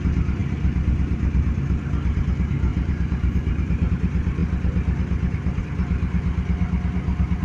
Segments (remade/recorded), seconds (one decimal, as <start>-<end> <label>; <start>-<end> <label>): 0.0-2.7 recorded; 2.7-3.9 remade; 3.9-7.4 recorded